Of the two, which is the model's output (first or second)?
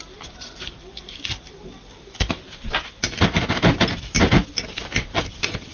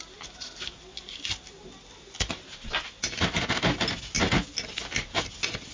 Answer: first